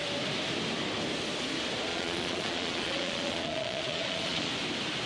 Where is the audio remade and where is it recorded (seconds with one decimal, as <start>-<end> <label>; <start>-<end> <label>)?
0.0-1.9 recorded; 1.9-4.5 remade; 4.5-5.1 recorded